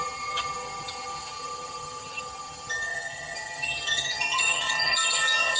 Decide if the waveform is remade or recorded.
remade